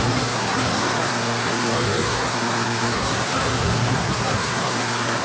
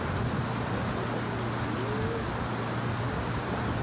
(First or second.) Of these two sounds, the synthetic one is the first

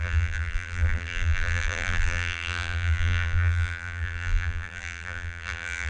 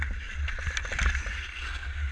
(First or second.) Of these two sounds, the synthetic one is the first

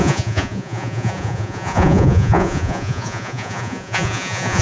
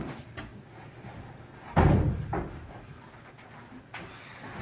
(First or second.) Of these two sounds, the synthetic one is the first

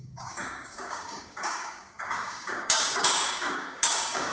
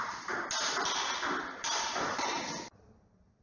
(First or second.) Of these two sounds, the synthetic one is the first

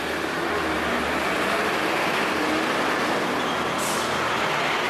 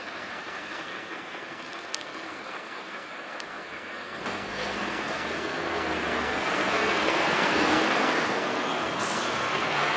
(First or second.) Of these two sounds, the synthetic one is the second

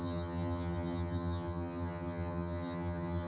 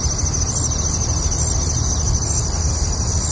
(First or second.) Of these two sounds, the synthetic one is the first